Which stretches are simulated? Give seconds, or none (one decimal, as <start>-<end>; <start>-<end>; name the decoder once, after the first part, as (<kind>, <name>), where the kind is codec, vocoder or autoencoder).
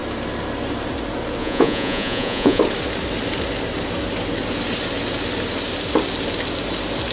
1.4-2.6 (vocoder, Vocos)